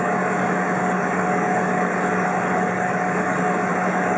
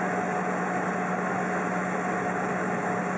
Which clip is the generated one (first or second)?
first